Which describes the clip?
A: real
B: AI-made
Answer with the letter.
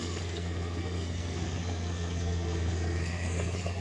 B